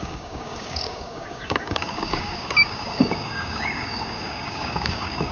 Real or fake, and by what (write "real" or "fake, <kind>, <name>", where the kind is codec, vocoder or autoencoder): fake, codec, DAC